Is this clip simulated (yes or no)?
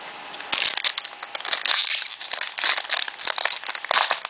no